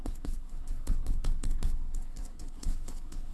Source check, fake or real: fake